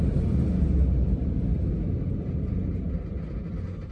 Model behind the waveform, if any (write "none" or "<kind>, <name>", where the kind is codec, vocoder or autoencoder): none